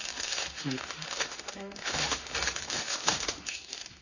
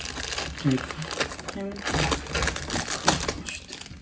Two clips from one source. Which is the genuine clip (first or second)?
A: second